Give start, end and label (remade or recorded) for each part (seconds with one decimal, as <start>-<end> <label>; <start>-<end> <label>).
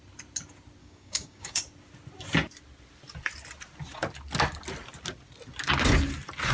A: 0.0-0.8 recorded; 0.8-1.6 remade; 1.6-6.5 recorded